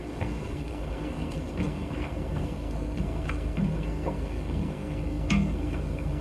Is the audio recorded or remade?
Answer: remade